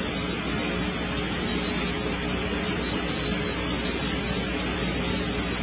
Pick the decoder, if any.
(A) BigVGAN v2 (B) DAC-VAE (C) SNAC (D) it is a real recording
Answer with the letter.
D